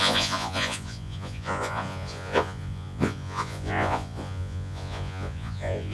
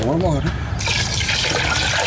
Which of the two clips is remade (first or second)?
first